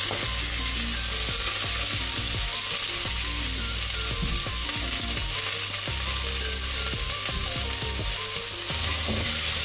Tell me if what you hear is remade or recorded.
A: recorded